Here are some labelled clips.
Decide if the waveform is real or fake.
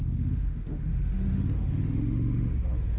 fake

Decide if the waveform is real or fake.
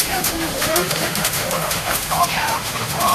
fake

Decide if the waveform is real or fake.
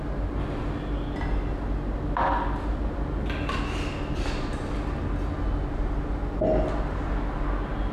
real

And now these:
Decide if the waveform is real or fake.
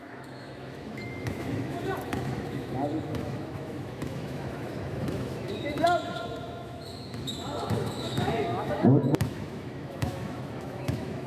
fake